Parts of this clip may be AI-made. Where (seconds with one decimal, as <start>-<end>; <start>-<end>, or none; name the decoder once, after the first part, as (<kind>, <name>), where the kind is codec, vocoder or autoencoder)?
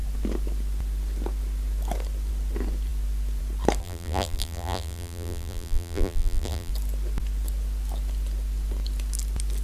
3.8-6.7 (vocoder, BigVGAN v2)